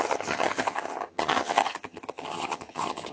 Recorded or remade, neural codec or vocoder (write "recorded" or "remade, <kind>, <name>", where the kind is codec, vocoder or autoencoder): remade, vocoder, HiFi-GAN